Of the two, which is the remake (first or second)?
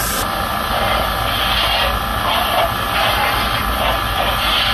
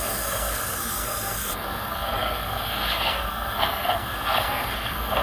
second